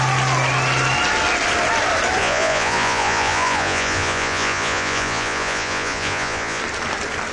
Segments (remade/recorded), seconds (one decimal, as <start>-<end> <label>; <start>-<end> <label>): 0.0-2.2 recorded; 2.2-6.6 remade; 6.6-7.3 recorded